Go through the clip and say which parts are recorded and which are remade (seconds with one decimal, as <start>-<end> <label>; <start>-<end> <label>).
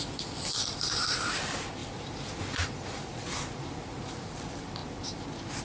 0.0-0.6 recorded; 0.6-1.4 remade; 1.4-1.8 recorded; 1.8-4.0 remade; 4.0-5.6 recorded